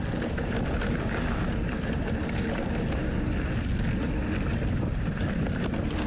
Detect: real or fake real